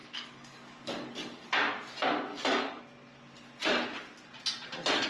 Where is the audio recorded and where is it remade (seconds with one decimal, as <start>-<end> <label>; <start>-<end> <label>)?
0.0-1.5 remade; 1.5-2.3 recorded; 2.3-2.8 remade; 2.8-5.1 recorded